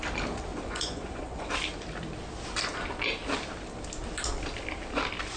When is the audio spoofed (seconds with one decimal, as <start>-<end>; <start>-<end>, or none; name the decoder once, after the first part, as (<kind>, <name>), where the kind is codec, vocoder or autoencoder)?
0.5-1.5 (vocoder, Vocos)